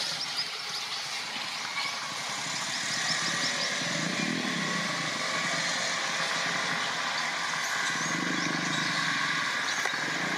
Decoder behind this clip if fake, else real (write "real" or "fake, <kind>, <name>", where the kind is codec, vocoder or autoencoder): real